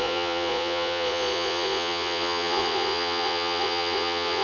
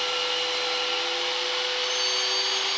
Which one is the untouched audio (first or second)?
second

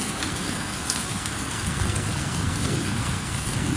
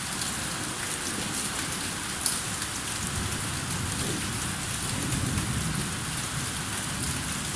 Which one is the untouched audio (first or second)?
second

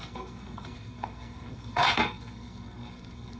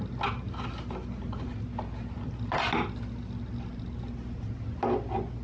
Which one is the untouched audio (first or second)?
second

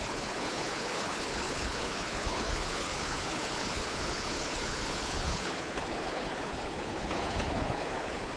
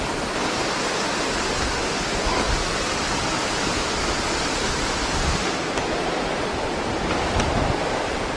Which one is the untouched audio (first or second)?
second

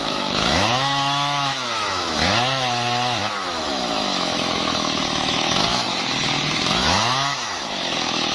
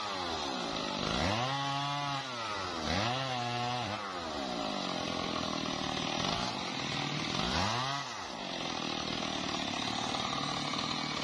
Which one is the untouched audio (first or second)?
second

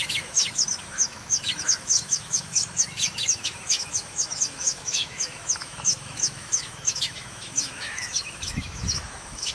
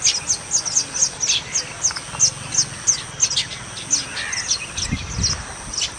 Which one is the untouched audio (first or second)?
second